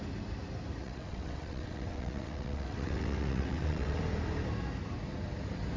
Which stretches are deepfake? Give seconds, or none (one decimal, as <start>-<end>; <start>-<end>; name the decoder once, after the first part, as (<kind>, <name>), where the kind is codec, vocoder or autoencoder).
0.8-4.0 (vocoder, WaveNeXt)